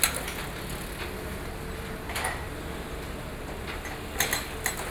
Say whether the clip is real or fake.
real